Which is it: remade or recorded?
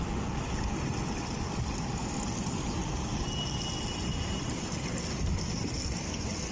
recorded